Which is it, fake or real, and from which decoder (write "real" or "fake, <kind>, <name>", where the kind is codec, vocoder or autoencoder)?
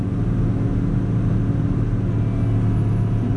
real